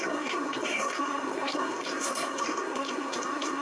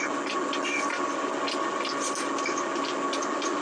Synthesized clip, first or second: first